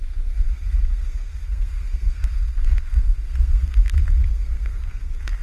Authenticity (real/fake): fake